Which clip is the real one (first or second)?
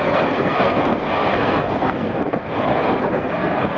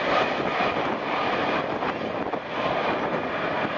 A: second